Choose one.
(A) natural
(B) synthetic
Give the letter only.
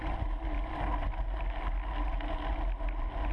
A